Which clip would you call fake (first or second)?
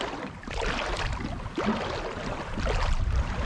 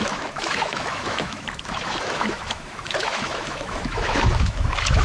second